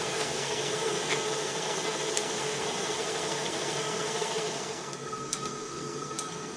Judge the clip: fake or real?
fake